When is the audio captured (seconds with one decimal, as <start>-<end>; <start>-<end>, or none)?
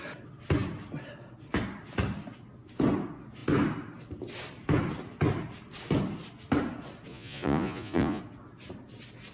0.0-7.1; 8.2-9.3